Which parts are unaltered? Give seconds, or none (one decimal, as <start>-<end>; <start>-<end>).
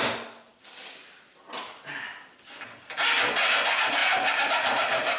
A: 0.0-5.2